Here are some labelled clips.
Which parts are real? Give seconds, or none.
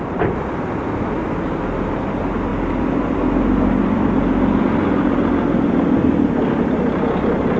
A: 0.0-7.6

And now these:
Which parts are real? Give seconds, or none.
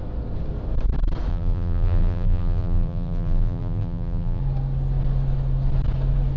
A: 0.0-1.3; 4.4-6.4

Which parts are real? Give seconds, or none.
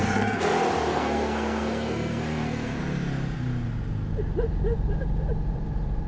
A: 0.5-0.9; 2.8-6.1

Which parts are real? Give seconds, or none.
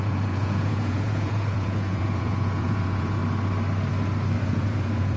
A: 3.2-4.4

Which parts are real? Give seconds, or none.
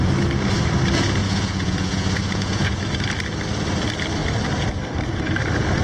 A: 0.0-1.2; 2.8-5.8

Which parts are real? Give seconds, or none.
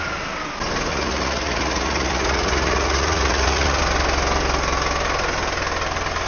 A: 0.0-0.9; 3.8-6.3